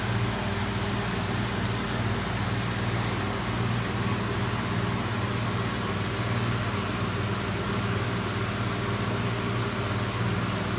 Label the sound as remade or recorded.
recorded